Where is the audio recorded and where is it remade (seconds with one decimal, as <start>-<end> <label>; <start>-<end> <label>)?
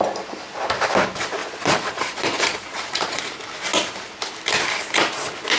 0.0-1.4 recorded; 1.4-3.2 remade; 3.2-5.6 recorded